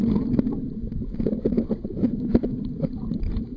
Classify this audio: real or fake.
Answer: fake